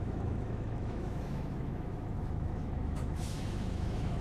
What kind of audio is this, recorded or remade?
remade